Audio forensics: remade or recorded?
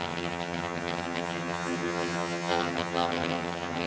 remade